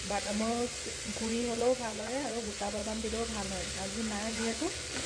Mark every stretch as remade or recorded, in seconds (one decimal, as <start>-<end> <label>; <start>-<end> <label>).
0.0-2.8 remade; 2.8-4.3 recorded; 4.3-5.1 remade